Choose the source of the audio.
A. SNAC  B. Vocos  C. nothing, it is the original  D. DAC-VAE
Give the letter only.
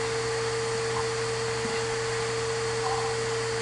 C